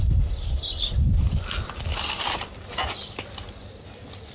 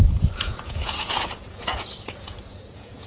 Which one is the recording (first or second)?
first